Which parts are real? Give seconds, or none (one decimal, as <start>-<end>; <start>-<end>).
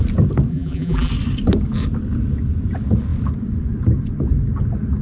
0.0-0.5; 1.1-5.0